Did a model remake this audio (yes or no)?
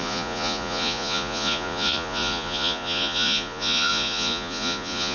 yes